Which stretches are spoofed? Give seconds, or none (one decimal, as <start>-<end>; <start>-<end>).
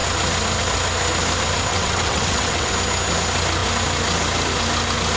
1.7-2.7